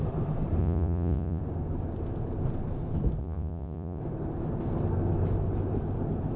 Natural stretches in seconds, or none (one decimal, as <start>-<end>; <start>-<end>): 0.0-0.6; 1.4-3.2; 4.0-6.4